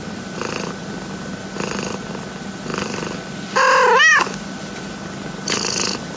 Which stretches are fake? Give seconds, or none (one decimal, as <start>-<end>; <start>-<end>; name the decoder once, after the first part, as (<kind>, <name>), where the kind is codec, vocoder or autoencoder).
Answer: none